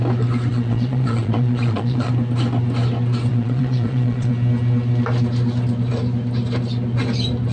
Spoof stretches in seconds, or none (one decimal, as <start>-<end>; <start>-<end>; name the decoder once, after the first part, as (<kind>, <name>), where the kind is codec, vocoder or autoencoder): 0.5-2.1 (vocoder, Vocos); 3.3-4.3